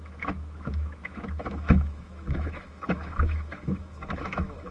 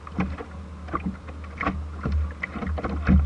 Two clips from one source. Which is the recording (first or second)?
second